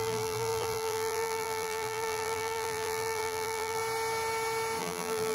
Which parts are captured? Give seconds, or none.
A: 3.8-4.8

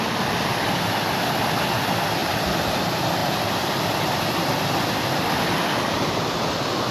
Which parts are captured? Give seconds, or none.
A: 0.0-2.2; 2.8-6.9

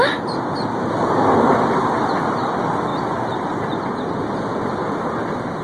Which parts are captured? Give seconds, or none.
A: 2.9-4.1

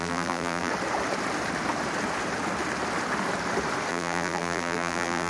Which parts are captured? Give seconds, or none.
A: 0.7-3.9

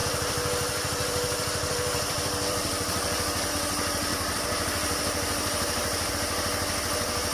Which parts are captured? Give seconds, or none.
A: 3.5-4.1; 6.1-7.3

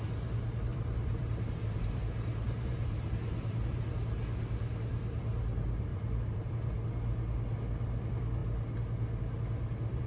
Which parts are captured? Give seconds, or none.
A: 0.0-0.7; 3.9-5.9; 6.5-10.1

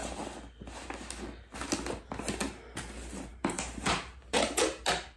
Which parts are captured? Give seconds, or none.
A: 0.0-3.3; 4.6-5.2

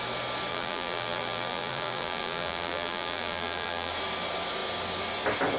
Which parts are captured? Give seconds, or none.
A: 0.0-0.5; 3.9-5.6